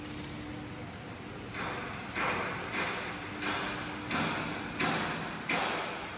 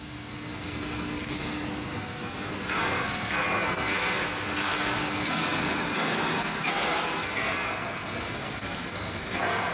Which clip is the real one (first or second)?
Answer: first